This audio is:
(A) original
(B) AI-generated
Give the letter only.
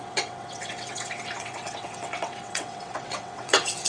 B